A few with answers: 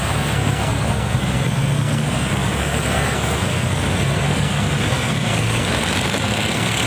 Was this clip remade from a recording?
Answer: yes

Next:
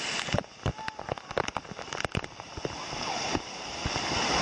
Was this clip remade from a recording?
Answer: no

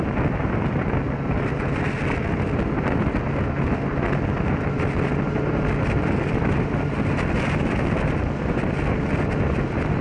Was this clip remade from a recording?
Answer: no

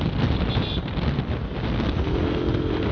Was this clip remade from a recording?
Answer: no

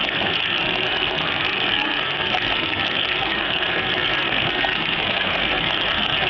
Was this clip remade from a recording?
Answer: yes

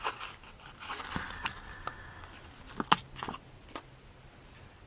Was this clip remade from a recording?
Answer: no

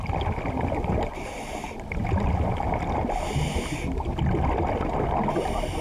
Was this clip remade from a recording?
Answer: no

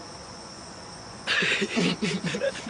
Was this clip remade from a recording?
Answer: yes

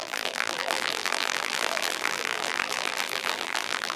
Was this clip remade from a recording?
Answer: yes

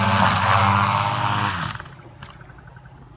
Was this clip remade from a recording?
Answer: no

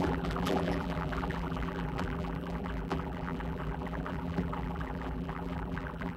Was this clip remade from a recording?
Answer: yes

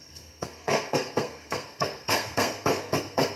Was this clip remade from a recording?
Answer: yes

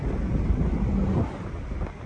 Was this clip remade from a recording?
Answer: no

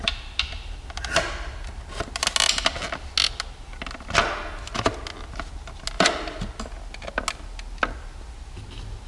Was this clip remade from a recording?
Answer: no